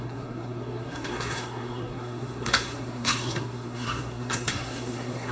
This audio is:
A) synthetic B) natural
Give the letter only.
A